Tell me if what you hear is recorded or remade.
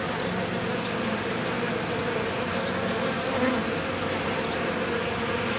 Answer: recorded